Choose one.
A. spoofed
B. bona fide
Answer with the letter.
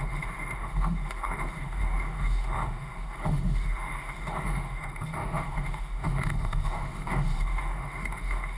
A